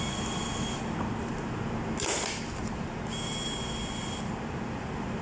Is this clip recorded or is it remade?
recorded